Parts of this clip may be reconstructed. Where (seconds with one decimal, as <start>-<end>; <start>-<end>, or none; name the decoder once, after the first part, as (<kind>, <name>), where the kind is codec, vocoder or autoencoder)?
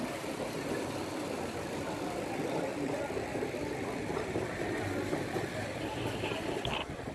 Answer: 0.0-7.1 (vocoder, BigVGAN v2)